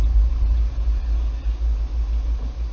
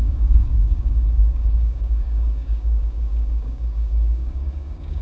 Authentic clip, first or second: first